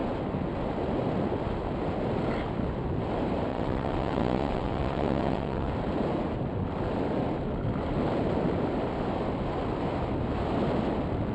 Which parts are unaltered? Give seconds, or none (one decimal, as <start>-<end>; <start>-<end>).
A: 0.0-3.5; 5.7-11.3